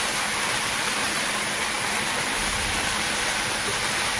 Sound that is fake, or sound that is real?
fake